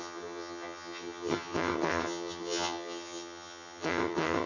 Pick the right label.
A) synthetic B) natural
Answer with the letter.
A